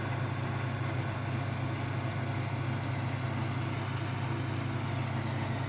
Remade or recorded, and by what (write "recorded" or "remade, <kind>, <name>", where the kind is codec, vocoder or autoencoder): recorded